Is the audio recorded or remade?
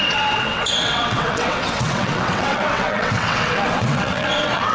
remade